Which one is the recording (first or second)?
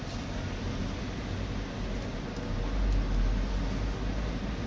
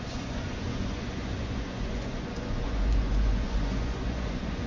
first